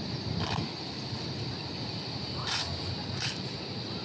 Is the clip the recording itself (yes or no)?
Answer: yes